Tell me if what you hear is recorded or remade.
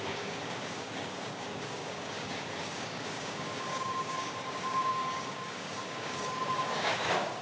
remade